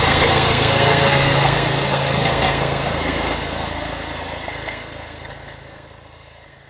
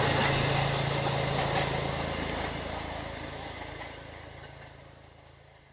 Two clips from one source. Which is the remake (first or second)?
first